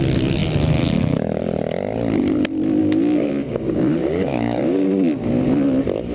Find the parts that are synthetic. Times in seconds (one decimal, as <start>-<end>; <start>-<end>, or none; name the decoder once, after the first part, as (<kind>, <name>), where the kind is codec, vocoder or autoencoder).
2.8-5.3 (codec, DAC)